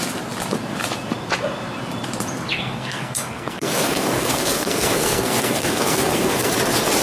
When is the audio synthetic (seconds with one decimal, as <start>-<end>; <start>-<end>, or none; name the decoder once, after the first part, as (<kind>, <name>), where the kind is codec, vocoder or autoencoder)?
2.5-6.5 (codec, SNAC)

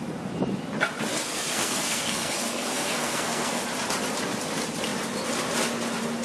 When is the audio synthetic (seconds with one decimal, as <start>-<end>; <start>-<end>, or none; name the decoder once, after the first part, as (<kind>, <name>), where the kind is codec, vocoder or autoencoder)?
1.1-3.6 (codec, SNAC)

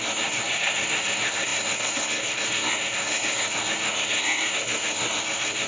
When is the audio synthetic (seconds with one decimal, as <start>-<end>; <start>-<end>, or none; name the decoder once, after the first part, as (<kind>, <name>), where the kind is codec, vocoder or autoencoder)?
0.0-5.7 (codec, SNAC)

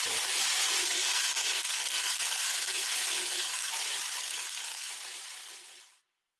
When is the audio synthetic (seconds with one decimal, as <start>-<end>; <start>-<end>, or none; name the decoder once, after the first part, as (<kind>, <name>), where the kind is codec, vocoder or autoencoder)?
0.8-3.7 (codec, SNAC); 4.2-4.9

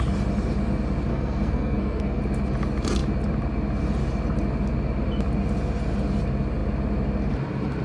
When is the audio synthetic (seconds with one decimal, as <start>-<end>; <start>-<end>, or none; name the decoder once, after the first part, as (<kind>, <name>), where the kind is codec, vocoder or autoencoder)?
1.1-2.2 (codec, SNAC)

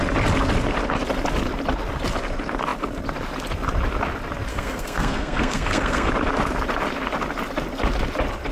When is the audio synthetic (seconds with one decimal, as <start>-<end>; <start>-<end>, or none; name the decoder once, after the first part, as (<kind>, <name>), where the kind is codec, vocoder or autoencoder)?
4.5-6.1 (codec, SNAC)

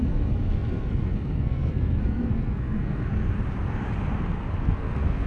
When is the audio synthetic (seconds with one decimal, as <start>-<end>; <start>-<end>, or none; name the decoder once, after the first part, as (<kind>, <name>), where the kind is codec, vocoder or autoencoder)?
0.0-3.2 (codec, SNAC); 4.6-5.3

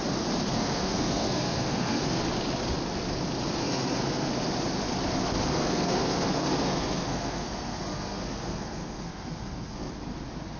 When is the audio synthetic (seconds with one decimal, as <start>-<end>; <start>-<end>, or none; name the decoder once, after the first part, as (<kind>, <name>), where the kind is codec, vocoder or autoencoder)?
0.5-2.2 (codec, SNAC); 3.6-4.3; 5.5-9.9